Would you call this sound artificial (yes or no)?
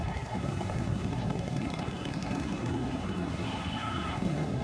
yes